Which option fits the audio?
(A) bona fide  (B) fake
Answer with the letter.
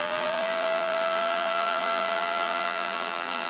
B